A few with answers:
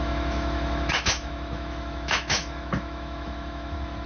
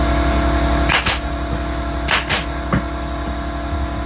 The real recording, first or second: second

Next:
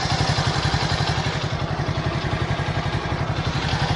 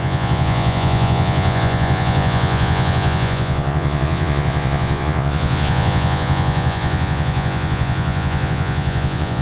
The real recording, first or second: first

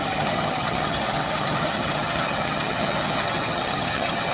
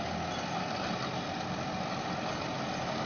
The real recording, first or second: second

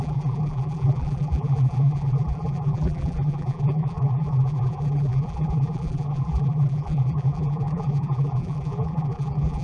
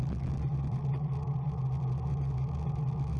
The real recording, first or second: second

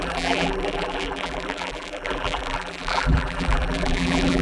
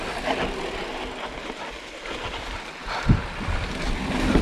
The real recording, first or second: second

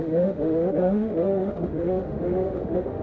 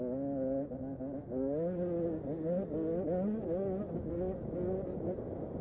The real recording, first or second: second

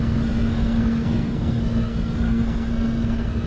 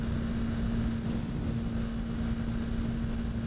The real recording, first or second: second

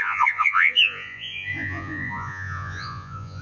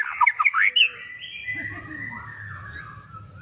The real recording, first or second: second